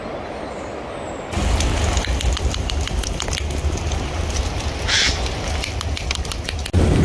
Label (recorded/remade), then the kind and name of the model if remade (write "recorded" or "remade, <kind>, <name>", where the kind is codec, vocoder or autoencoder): recorded